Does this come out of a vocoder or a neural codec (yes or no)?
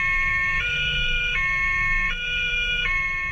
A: yes